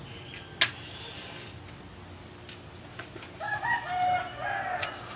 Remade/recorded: recorded